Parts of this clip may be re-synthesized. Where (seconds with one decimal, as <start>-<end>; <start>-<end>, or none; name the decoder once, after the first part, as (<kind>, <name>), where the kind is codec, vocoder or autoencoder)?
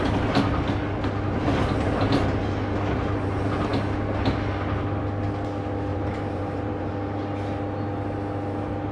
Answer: 5.9-6.9 (vocoder, BigVGAN v2)